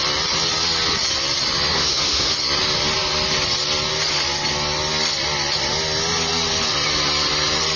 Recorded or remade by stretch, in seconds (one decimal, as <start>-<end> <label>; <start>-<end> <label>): 0.0-1.7 recorded; 1.7-2.3 remade; 2.3-7.8 recorded